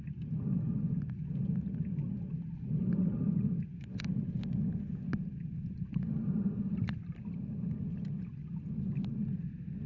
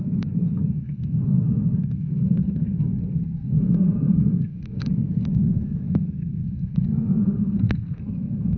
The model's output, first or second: second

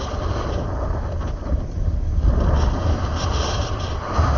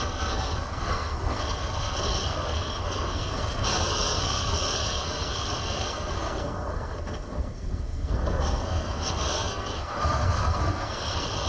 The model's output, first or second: second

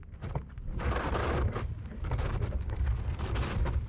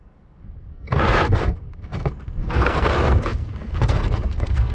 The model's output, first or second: second